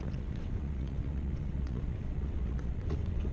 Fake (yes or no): yes